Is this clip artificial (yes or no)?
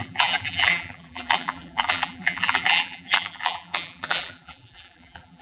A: yes